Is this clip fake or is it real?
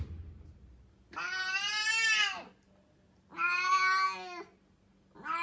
real